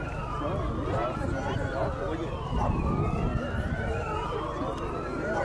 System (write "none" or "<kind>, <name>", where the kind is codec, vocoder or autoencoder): none